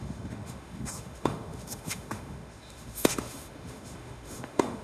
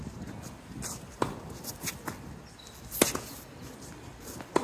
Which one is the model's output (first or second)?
first